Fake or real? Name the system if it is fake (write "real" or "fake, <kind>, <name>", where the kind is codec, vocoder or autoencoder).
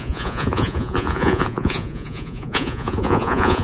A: fake, vocoder, Vocos